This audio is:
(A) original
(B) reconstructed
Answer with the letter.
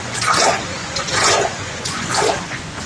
B